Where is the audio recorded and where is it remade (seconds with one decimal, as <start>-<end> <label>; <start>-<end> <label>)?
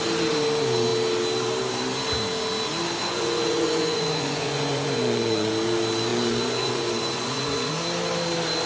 0.0-3.0 recorded; 3.0-5.5 remade; 5.5-6.1 recorded; 6.1-7.7 remade; 7.7-8.7 recorded